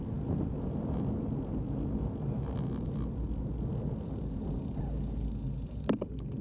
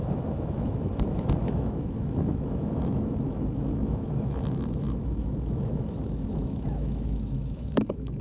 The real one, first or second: first